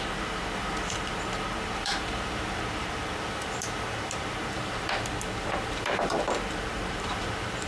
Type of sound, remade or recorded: remade